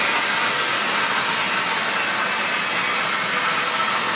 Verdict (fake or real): real